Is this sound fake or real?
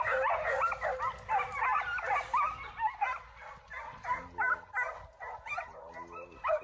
real